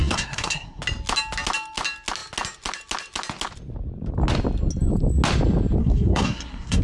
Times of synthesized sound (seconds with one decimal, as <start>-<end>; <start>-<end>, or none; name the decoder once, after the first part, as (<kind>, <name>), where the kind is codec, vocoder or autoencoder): 0.0-0.8 (codec, SNAC); 5.8-6.8